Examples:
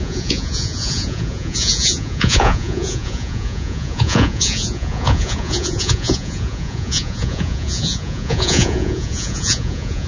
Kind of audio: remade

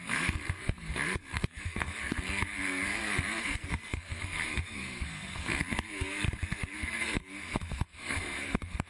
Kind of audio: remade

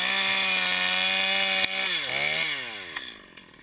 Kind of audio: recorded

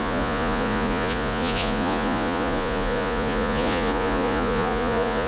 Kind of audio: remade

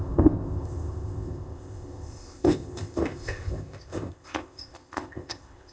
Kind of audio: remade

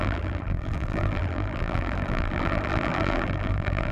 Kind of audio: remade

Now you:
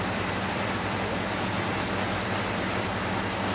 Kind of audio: remade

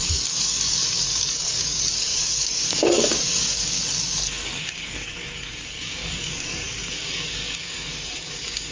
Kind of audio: remade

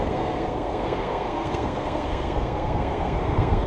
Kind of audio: remade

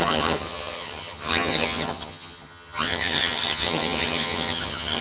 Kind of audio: remade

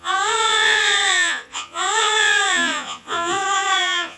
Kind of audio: remade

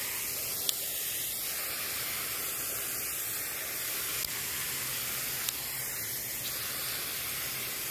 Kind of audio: recorded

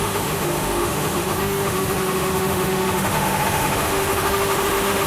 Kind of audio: remade